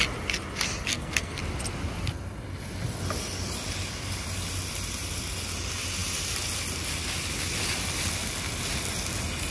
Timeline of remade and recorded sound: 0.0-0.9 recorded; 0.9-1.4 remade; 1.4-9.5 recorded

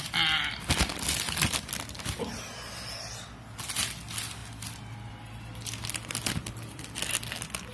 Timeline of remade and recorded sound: 0.0-7.7 recorded

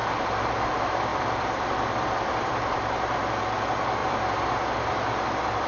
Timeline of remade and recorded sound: 0.0-1.1 recorded; 1.1-2.5 remade; 2.5-4.0 recorded; 4.0-5.7 remade

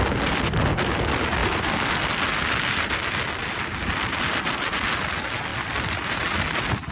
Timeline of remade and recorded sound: 0.0-1.4 recorded; 1.4-1.9 remade; 1.9-6.9 recorded

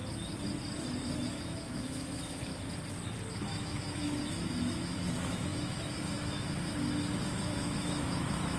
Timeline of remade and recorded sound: 0.0-1.3 recorded; 1.3-2.5 remade; 2.5-3.3 recorded; 3.3-8.6 remade

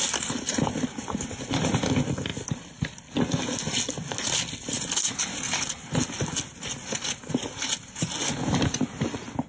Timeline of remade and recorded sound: 0.0-9.5 recorded